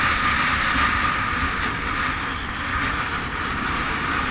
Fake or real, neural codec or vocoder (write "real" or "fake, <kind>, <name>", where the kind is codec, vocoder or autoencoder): real